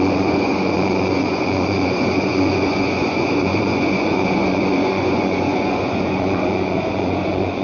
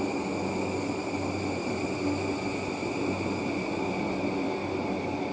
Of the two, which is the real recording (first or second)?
second